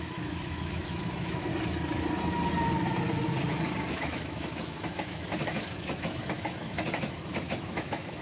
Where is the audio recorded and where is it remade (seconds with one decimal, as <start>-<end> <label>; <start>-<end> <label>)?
0.0-1.5 remade; 1.5-3.9 recorded; 3.9-8.2 remade